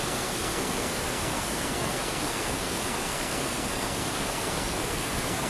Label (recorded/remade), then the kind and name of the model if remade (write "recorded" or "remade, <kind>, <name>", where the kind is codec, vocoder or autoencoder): remade, codec, SNAC